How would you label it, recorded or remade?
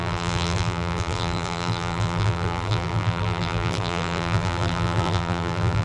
remade